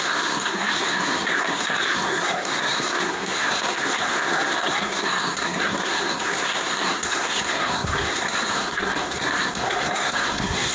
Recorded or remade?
remade